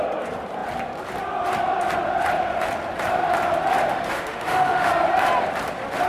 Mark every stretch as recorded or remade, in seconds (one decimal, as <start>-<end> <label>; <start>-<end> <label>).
0.0-3.9 recorded; 3.9-4.9 remade; 4.9-6.1 recorded